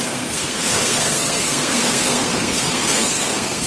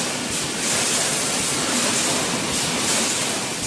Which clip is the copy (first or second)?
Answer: first